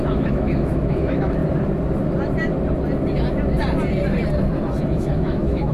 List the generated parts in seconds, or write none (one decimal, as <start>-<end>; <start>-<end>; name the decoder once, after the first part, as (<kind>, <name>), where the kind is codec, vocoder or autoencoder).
0.0-1.4 (autoencoder, DAC-VAE); 4.8-5.7